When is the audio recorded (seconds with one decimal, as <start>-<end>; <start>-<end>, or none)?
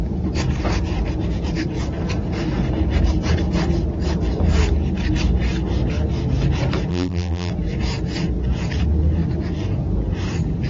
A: 0.0-6.9; 7.5-10.7